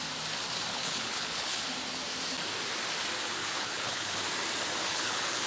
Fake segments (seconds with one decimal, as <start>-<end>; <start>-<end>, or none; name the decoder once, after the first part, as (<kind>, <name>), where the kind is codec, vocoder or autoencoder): 0.7-1.6 (codec, HILCodec); 3.4-4.2; 4.8-5.5